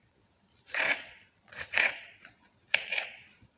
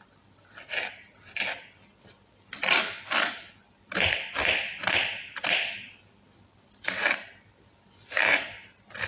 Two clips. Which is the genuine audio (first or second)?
second